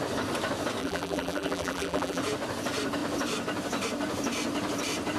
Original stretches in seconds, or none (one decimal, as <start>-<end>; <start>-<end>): 0.0-0.8; 2.2-5.2